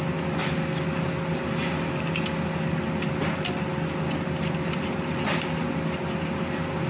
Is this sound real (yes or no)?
yes